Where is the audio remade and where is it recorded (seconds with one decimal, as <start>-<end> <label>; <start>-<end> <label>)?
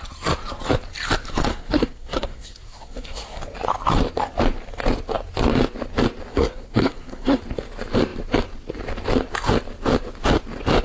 0.0-1.5 recorded; 1.5-3.4 remade; 3.4-6.3 recorded; 6.3-7.4 remade; 7.4-10.8 recorded